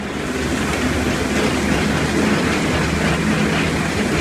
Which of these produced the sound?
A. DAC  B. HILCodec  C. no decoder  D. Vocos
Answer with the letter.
C